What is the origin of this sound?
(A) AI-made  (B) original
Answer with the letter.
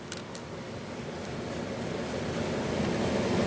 B